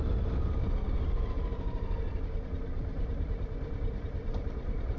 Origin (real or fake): real